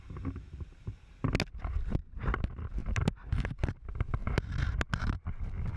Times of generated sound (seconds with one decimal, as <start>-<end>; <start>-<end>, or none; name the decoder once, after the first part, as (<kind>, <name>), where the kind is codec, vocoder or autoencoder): none